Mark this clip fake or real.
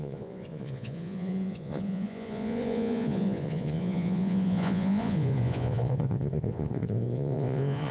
fake